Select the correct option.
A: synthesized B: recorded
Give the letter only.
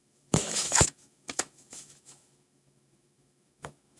A